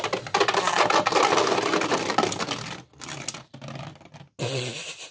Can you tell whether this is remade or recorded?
recorded